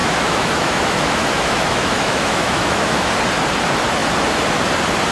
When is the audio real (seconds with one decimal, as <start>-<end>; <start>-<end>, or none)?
3.1-5.1